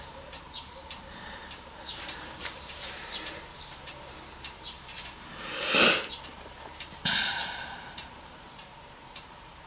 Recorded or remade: remade